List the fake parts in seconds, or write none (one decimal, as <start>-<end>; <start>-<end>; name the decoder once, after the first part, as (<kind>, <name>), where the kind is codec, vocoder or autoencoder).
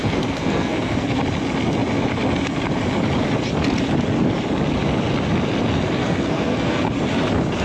0.0-1.2 (codec, SNAC); 6.0-6.9